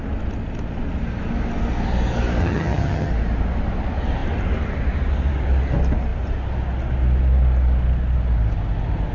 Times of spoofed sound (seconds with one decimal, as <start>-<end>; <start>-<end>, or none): 2.4-3.1